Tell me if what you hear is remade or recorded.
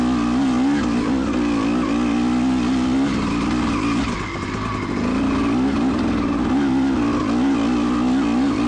recorded